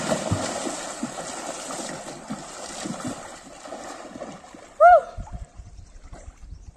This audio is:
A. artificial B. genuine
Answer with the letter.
B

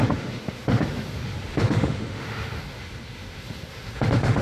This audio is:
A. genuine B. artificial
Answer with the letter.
B